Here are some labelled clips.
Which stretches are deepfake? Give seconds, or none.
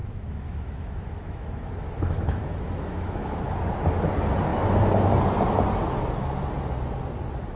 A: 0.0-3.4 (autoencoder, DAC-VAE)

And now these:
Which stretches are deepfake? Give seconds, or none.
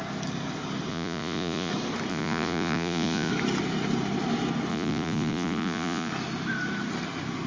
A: 0.9-1.7 (vocoder, Vocos); 2.1-3.3; 4.7-6.1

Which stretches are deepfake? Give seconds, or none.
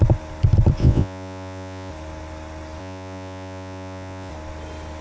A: 0.8-1.9 (vocoder, Vocos); 2.8-4.3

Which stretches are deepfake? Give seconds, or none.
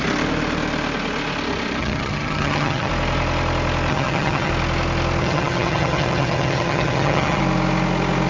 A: 1.8-2.9 (vocoder, HiFi-GAN); 3.9-4.5; 5.2-7.4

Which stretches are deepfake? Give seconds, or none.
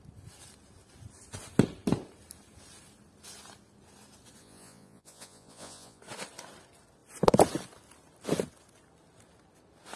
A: 4.4-6.0 (vocoder, Vocos)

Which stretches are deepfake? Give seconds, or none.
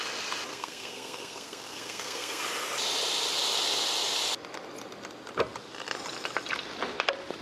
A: 0.5-2.4 (codec, SNAC)